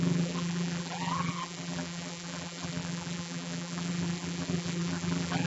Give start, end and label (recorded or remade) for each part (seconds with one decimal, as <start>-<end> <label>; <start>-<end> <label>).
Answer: 0.0-5.5 remade